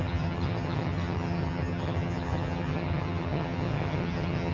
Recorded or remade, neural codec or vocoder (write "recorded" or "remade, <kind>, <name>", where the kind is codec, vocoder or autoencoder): remade, vocoder, HiFi-GAN